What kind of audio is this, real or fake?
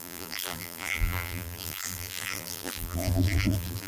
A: fake